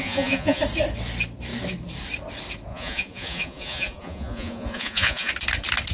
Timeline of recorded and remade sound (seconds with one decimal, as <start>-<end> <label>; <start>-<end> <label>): 0.0-0.6 remade; 0.6-2.7 recorded; 2.7-5.3 remade; 5.3-5.9 recorded